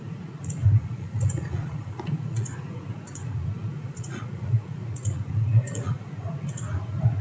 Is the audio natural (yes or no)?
no